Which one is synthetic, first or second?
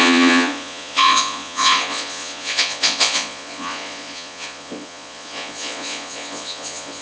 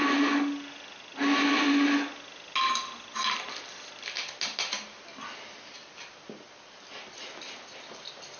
first